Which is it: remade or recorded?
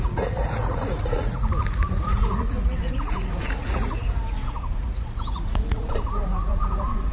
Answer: remade